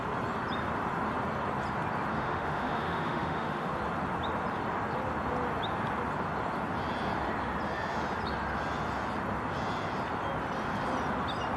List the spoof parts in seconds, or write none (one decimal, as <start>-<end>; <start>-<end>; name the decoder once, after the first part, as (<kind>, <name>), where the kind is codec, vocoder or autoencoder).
2.1-3.7 (autoencoder, DAC-VAE)